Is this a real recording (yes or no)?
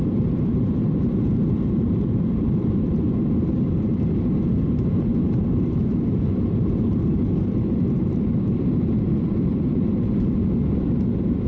no